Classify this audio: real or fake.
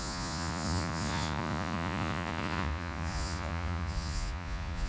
fake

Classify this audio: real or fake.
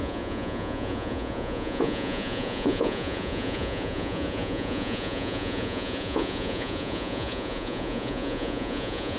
fake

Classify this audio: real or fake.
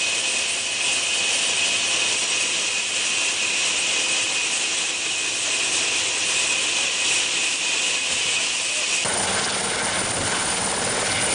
real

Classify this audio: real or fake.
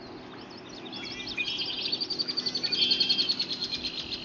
real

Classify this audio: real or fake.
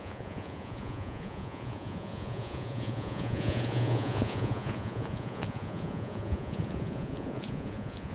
fake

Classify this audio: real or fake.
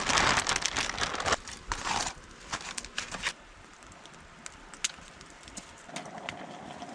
real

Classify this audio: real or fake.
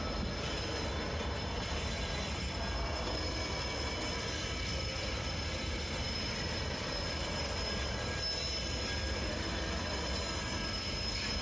real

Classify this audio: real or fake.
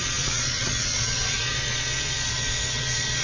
fake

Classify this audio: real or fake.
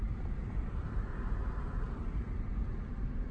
real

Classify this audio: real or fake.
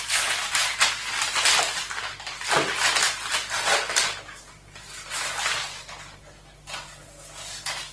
real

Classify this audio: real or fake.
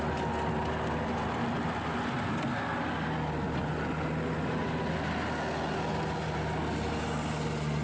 real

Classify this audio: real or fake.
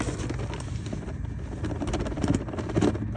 real